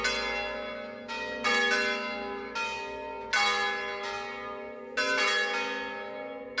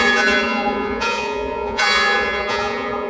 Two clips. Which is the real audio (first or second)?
first